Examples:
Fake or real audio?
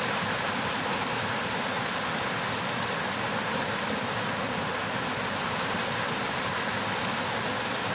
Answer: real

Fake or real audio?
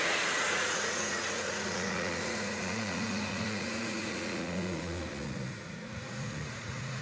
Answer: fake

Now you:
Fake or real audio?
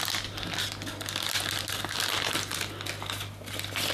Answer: real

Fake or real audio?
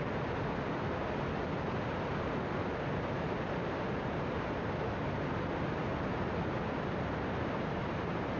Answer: real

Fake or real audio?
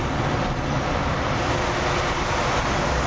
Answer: real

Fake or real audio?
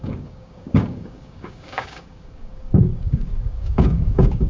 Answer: fake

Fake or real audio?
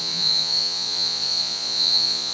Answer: fake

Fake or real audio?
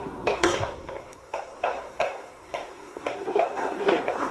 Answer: fake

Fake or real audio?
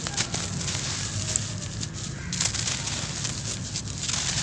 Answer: real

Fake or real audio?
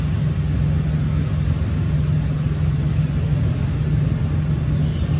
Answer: real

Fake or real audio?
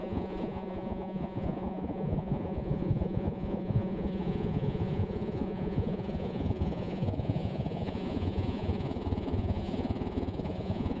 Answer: fake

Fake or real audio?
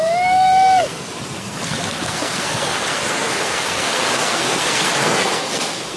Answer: fake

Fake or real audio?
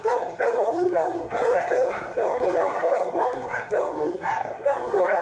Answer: fake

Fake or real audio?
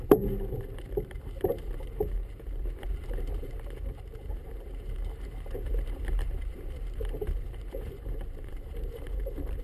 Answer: fake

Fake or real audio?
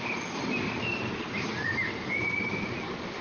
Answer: real